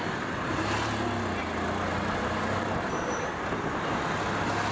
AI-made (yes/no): no